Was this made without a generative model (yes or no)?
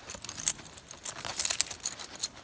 yes